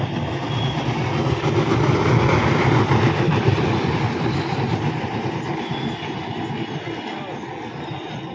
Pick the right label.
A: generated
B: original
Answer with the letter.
B